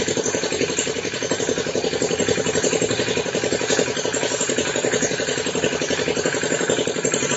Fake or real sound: fake